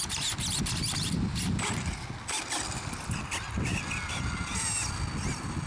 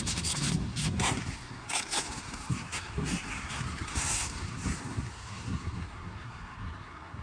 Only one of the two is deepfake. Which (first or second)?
second